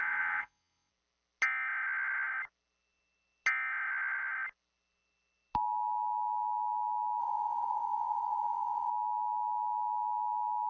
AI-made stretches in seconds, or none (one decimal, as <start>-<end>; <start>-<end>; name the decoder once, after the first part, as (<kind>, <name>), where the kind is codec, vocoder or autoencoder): 0.0-0.9 (vocoder, WaveNeXt); 7.2-8.9